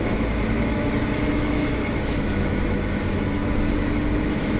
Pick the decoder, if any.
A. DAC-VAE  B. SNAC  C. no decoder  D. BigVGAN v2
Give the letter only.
A